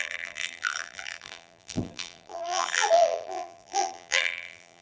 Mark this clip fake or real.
fake